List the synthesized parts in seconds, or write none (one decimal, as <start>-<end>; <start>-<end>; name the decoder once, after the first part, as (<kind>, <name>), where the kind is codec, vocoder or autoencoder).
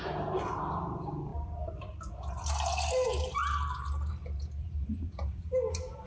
none